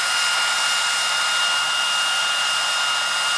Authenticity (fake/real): real